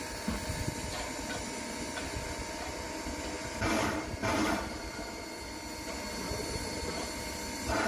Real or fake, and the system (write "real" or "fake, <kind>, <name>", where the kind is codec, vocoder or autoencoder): fake, vocoder, BigVGAN v2